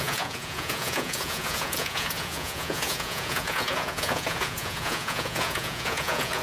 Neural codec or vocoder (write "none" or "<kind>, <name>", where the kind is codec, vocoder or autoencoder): vocoder, Vocos